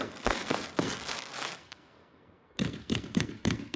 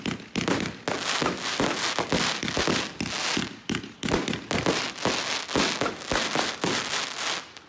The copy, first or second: first